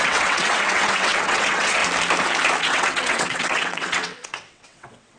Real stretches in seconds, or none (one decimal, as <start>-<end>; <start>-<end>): 1.8-2.6